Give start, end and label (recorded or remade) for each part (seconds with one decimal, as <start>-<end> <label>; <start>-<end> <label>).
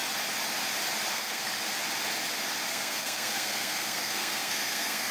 0.0-1.1 recorded; 1.1-1.5 remade; 1.5-2.7 recorded; 2.7-5.1 remade